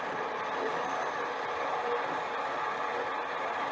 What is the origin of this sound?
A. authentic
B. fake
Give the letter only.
A